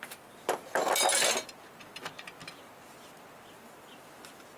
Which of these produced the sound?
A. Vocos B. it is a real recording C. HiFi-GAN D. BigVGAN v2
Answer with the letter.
B